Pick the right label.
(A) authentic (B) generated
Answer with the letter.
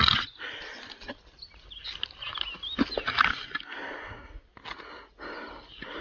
A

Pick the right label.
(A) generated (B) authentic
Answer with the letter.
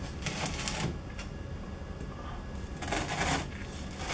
B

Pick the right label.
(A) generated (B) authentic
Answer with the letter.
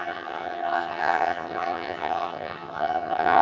A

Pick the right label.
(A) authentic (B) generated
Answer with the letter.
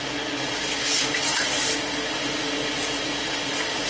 A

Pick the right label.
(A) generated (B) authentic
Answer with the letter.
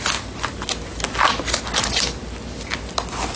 B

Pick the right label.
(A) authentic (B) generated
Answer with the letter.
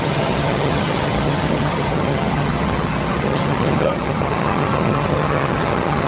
B